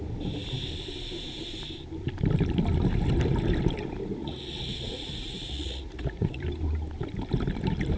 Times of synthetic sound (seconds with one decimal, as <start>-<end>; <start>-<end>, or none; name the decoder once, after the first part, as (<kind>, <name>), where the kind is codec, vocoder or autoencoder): 4.2-6.4 (vocoder, Vocos)